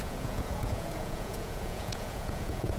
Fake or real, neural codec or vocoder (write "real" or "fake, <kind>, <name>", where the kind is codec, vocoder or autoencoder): fake, vocoder, Vocos